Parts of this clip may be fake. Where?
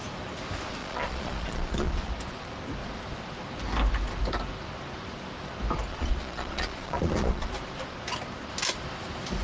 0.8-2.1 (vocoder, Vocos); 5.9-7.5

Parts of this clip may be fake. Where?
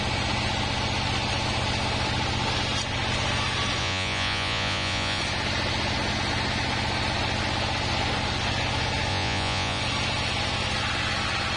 3.8-5.2 (vocoder, Vocos); 9.1-9.8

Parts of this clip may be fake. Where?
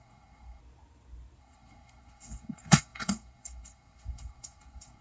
0.0-0.6 (codec, SNAC); 1.4-5.0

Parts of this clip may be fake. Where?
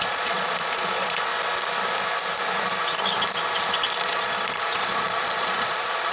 0.0-1.3 (vocoder, Vocos); 4.0-6.1